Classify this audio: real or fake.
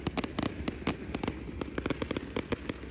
real